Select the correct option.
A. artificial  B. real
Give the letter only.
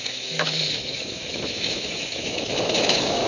A